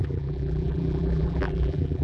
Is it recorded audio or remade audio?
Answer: remade